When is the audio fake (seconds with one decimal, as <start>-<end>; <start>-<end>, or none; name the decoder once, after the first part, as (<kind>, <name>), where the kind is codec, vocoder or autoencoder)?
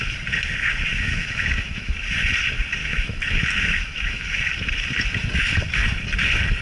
0.9-2.0 (autoencoder, DAC-VAE); 2.8-4.4